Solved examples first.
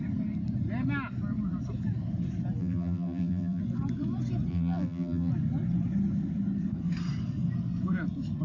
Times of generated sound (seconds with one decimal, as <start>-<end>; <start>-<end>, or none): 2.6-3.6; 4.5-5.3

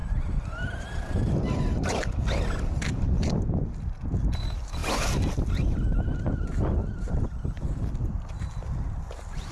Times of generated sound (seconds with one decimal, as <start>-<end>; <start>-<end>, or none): 0.0-4.8; 7.1-9.5

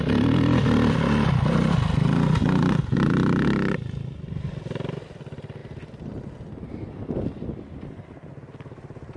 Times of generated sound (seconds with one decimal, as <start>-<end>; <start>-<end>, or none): none

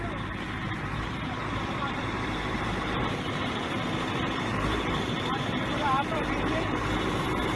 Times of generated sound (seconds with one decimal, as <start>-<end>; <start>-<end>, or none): 0.0-7.6

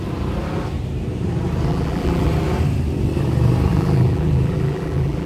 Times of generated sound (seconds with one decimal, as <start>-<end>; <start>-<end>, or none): 1.7-2.3; 3.7-5.3

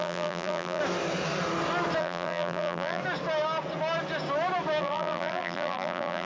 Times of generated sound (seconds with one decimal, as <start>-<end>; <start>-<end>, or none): 0.0-0.8; 2.0-3.0; 4.8-6.2

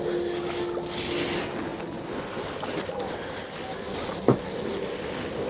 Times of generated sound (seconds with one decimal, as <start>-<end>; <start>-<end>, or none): none